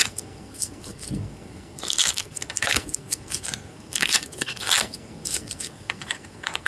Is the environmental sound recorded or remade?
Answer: remade